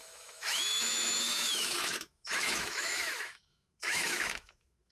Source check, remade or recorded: remade